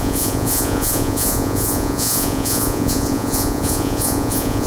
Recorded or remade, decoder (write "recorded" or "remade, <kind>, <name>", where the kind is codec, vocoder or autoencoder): remade, vocoder, Vocos